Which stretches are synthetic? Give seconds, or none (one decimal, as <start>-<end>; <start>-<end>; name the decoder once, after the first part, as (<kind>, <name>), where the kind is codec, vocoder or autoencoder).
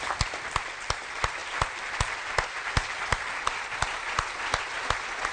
none